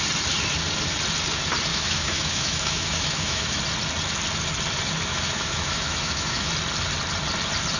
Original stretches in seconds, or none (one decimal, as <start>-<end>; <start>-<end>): 0.0-1.7; 3.6-5.1; 6.5-7.8